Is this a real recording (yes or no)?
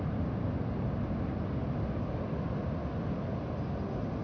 yes